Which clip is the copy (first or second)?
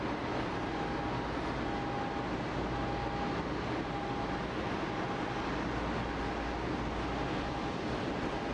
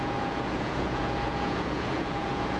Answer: second